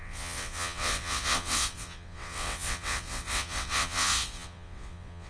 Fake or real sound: fake